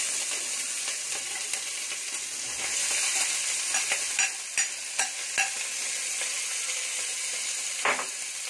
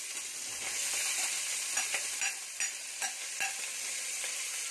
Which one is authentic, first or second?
first